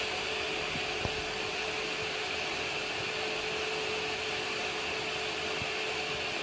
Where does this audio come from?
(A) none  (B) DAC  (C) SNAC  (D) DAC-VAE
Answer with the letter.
A